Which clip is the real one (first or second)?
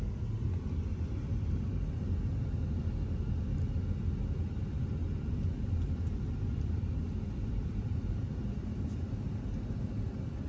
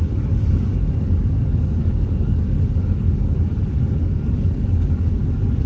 first